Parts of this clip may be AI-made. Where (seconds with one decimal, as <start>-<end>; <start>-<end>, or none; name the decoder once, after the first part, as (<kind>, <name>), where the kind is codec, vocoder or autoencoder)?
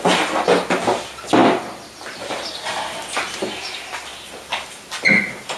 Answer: none